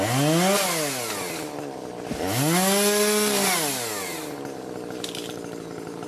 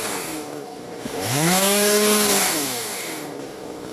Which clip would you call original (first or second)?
first